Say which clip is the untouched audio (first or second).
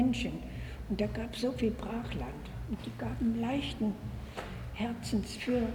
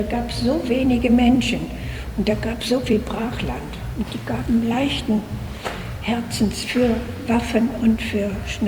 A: first